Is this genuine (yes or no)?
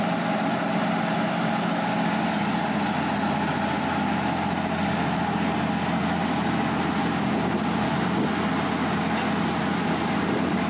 yes